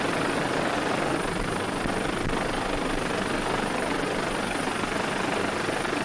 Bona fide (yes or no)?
yes